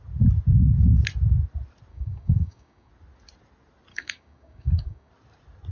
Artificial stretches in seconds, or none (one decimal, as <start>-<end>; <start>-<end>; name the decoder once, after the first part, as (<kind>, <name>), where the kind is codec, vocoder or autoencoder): 1.9-2.9 (codec, DAC); 3.9-5.1